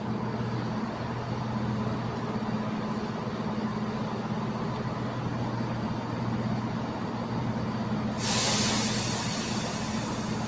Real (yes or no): yes